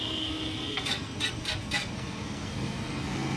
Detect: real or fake fake